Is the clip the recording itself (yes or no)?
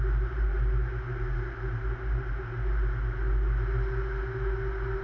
yes